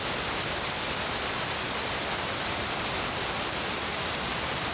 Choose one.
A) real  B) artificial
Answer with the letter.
A